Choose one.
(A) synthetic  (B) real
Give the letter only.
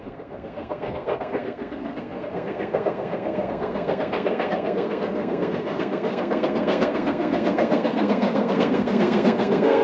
A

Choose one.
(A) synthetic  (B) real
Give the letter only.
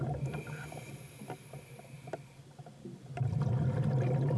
B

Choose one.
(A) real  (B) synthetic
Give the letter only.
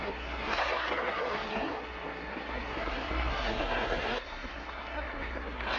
B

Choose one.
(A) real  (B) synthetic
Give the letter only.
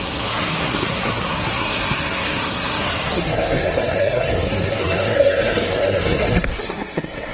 B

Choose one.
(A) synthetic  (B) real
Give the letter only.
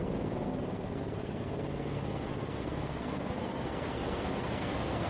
A